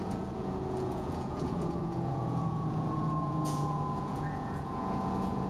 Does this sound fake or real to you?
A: fake